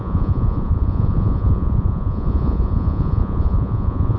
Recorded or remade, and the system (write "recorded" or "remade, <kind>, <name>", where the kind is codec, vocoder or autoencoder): remade, vocoder, Vocos